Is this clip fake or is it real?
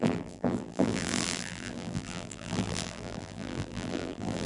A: fake